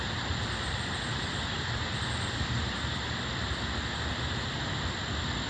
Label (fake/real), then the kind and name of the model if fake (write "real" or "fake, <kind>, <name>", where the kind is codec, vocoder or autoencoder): real